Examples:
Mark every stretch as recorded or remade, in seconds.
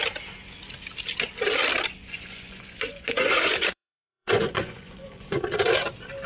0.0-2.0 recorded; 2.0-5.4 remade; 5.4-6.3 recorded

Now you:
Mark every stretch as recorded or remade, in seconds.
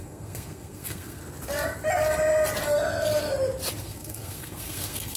0.0-1.2 remade; 1.2-3.8 recorded; 3.8-5.2 remade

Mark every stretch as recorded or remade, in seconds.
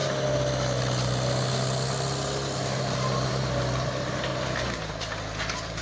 0.0-5.8 recorded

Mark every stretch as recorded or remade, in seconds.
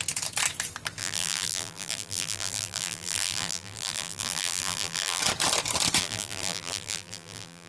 0.0-1.0 recorded; 1.0-5.2 remade; 5.2-6.0 recorded; 6.0-7.7 remade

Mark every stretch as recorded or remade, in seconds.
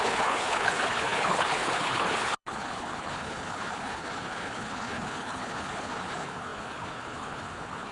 0.0-7.9 remade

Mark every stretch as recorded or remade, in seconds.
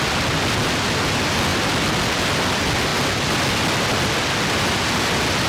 0.0-5.5 recorded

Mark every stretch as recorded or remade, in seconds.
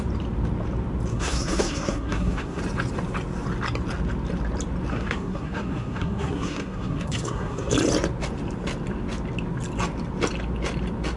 0.0-1.1 recorded; 1.1-2.6 remade; 2.6-4.9 recorded; 4.9-7.7 remade; 7.7-11.2 recorded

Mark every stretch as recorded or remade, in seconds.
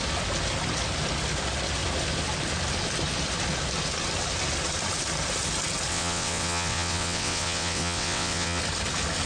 0.0-5.9 recorded; 5.9-8.6 remade; 8.6-9.3 recorded